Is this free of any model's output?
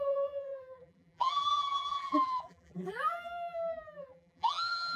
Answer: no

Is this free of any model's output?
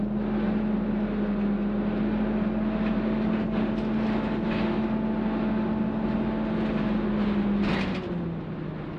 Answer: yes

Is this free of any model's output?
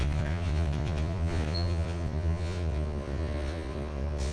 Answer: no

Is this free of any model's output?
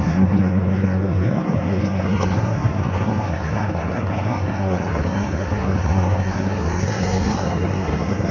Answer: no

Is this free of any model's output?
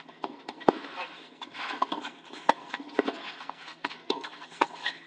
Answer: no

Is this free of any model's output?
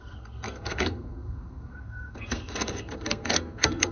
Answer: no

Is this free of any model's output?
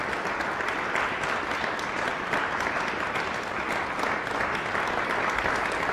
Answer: yes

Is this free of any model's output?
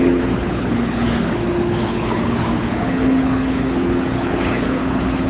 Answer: no